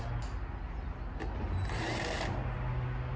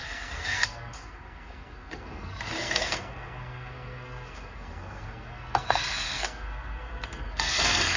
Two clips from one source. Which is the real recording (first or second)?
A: first